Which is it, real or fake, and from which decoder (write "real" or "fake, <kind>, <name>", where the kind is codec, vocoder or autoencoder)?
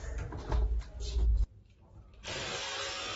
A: real